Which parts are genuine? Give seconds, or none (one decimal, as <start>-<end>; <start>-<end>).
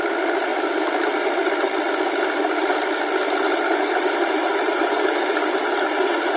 0.0-6.4